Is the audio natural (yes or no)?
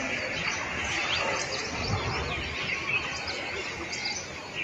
yes